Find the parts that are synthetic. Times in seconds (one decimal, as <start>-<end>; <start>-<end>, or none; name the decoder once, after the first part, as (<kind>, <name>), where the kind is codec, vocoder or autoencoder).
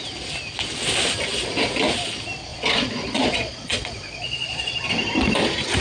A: 2.5-4.9 (vocoder, Vocos)